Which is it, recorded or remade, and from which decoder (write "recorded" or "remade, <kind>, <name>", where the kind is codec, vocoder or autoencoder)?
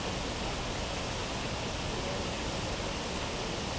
recorded